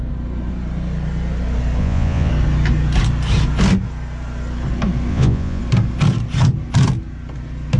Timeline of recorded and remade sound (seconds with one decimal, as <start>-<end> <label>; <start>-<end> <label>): 0.0-1.8 recorded; 1.8-2.3 remade; 2.3-5.1 recorded; 5.1-5.6 remade; 5.6-7.8 recorded